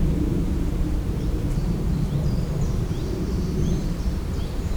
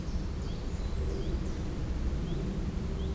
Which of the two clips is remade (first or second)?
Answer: first